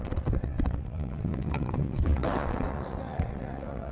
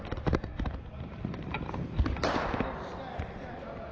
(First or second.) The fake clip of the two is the first